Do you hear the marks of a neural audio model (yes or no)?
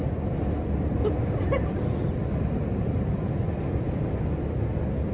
no